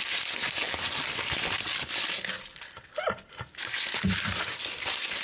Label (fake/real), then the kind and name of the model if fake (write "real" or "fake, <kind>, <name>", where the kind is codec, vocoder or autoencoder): real